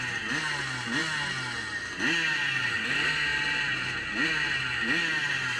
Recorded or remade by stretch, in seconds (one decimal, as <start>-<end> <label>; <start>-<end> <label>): 0.0-3.3 recorded; 3.3-4.3 remade; 4.3-5.6 recorded